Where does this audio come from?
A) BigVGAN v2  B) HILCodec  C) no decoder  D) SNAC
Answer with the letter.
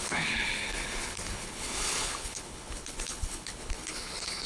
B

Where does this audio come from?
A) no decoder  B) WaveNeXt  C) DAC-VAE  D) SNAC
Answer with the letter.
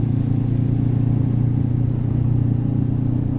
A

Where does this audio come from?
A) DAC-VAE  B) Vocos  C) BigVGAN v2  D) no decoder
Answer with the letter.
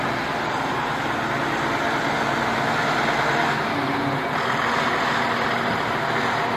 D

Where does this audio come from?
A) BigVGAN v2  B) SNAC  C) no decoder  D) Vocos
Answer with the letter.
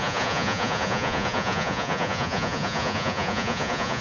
D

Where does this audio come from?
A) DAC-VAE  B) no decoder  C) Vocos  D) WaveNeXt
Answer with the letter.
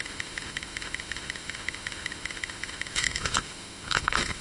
A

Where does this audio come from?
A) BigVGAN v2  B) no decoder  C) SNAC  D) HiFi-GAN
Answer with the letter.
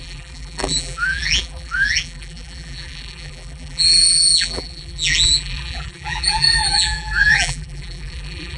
A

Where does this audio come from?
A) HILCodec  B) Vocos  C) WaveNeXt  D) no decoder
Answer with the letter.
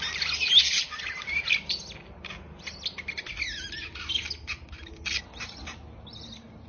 D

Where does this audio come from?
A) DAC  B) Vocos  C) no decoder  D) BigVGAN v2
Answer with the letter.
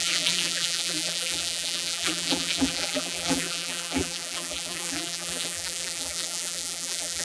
D